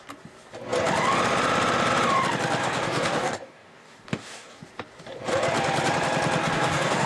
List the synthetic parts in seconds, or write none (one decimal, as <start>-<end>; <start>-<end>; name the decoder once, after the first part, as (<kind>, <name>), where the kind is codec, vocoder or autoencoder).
2.6-4.6 (codec, DAC); 6.4-7.1